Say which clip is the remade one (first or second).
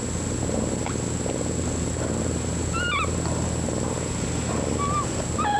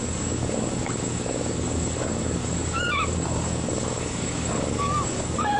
second